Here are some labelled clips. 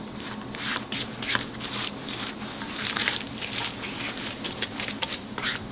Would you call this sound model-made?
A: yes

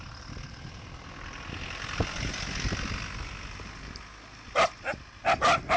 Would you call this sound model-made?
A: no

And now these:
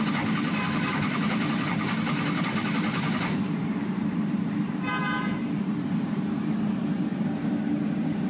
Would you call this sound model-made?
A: yes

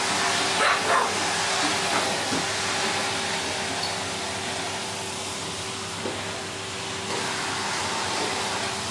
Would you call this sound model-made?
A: no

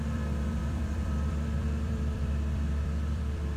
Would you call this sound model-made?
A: yes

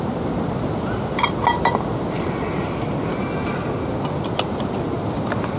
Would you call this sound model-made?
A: no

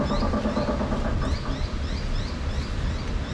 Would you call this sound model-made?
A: no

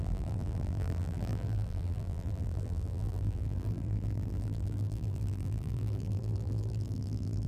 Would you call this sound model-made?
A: yes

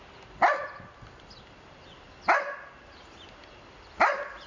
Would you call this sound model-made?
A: no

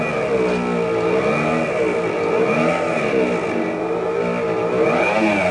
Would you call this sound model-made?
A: no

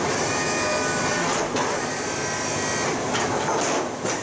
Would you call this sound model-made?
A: no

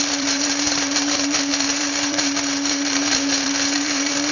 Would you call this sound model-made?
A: yes